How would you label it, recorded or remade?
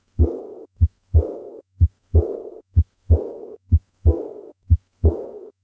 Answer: remade